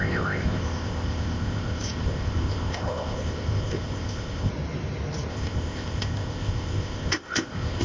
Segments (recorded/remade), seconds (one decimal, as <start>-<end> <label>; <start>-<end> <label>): 0.0-4.5 remade; 4.5-5.3 recorded; 5.3-7.8 remade